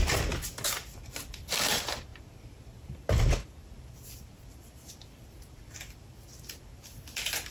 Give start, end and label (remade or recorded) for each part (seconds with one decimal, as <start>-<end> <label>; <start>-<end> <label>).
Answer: 0.0-7.5 remade